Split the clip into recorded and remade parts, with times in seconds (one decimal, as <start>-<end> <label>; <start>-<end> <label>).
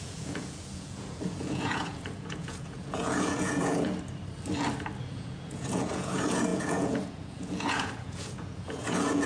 0.0-3.9 remade; 3.9-5.0 recorded; 5.0-9.3 remade